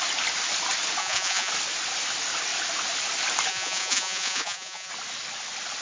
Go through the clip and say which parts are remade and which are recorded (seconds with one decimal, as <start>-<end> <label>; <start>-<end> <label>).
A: 0.0-1.0 recorded; 1.0-1.5 remade; 1.5-3.5 recorded; 3.5-4.9 remade; 4.9-5.8 recorded